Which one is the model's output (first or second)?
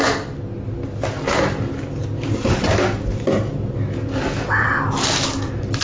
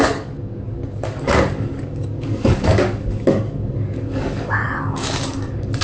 second